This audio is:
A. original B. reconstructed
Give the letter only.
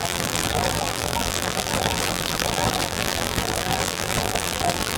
B